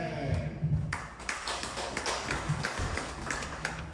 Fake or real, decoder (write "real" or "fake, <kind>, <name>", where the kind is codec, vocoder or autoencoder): fake, codec, DAC